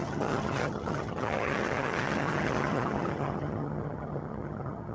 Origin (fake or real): fake